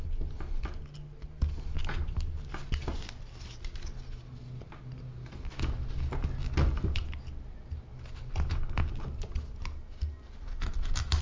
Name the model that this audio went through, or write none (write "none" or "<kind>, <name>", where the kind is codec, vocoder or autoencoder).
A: none